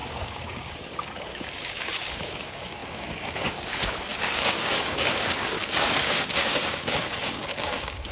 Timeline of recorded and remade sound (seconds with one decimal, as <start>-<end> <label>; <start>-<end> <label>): 0.0-8.1 remade